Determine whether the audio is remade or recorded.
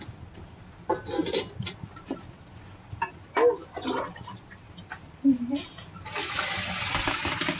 recorded